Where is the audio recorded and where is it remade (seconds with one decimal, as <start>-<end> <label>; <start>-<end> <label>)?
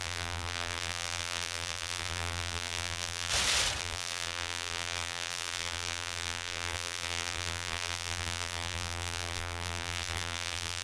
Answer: 0.0-3.3 remade; 3.3-3.8 recorded; 3.8-10.8 remade